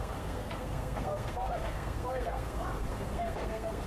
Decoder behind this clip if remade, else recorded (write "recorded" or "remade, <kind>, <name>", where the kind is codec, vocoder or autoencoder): remade, codec, SNAC